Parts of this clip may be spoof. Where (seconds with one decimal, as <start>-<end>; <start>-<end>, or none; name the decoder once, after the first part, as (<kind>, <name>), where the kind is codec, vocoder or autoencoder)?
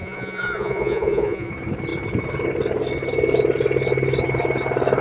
0.0-1.5 (vocoder, Vocos)